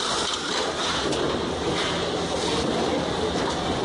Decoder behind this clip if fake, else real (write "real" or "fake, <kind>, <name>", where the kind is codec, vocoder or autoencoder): real